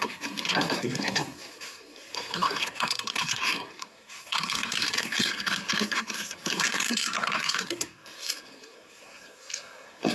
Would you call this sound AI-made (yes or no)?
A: yes